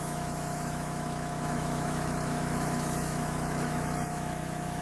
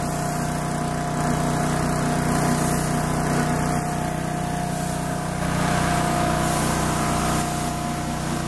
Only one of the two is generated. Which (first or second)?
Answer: first